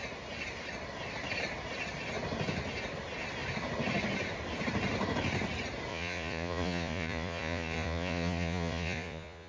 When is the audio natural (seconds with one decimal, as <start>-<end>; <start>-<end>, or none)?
0.0-5.9